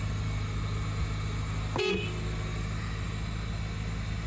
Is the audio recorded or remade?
recorded